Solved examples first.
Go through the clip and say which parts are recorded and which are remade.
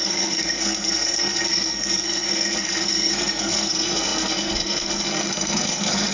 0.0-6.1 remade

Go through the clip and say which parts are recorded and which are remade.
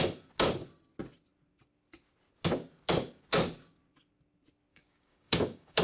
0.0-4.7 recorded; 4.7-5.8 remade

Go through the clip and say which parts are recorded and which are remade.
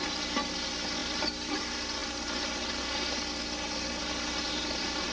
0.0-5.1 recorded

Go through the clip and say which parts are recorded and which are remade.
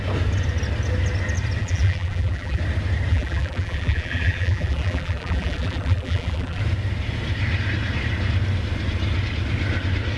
0.0-1.6 recorded; 1.6-2.6 remade; 2.6-3.1 recorded; 3.1-6.6 remade; 6.6-10.2 recorded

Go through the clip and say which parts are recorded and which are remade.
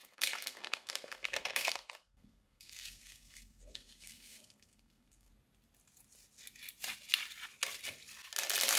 0.0-5.3 remade; 5.3-8.8 recorded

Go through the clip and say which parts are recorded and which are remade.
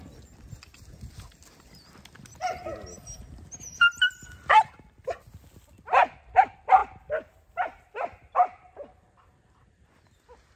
0.0-10.6 recorded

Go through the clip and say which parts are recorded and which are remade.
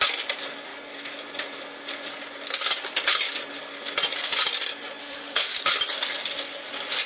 0.0-5.0 recorded; 5.0-5.6 remade; 5.6-7.1 recorded